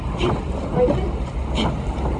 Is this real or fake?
real